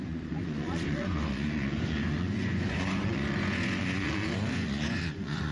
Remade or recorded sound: remade